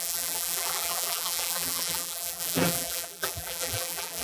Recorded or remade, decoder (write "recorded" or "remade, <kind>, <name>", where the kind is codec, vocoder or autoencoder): remade, vocoder, BigVGAN v2